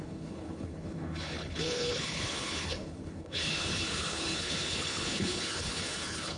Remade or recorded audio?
remade